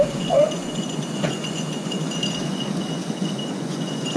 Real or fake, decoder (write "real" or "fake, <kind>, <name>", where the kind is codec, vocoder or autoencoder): fake, vocoder, Vocos